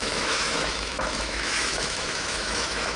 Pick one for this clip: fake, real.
fake